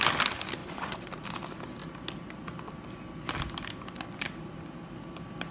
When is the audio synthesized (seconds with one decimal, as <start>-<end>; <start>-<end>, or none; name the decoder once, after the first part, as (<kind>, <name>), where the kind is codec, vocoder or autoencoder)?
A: 0.6-1.1 (vocoder, Vocos)